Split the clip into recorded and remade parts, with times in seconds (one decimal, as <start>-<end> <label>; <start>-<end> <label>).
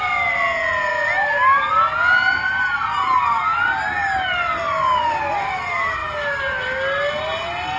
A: 0.0-7.8 recorded